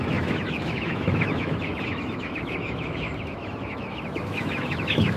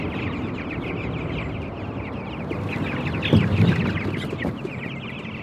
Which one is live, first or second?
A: second